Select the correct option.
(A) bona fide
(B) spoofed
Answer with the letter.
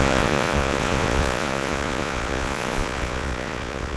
B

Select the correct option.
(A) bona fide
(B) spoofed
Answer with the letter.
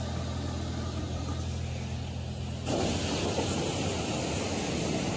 A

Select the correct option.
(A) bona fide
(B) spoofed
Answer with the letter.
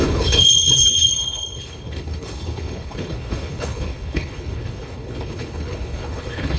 B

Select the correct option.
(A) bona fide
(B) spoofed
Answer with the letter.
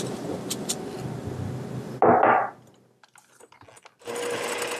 A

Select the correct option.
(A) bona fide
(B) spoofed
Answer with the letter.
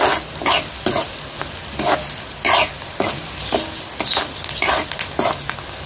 A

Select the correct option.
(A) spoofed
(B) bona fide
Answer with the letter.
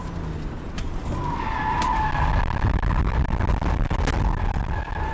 B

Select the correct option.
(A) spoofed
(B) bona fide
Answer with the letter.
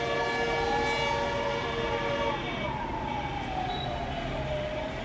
B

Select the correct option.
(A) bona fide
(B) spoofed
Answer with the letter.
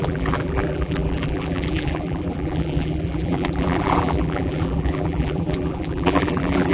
B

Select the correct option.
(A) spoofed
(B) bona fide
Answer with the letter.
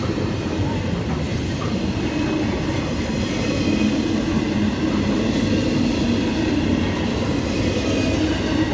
B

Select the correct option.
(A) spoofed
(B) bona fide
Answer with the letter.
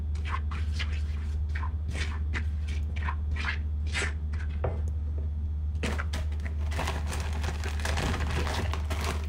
B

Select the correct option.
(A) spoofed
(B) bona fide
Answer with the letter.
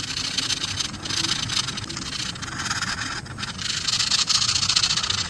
B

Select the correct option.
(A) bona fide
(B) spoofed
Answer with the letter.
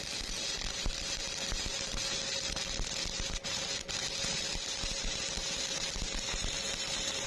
A